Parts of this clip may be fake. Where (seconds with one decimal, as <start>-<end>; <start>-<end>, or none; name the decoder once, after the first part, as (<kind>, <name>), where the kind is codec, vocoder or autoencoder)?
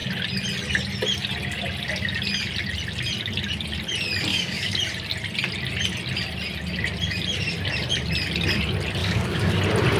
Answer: 4.3-4.8 (codec, DAC); 9.0-9.6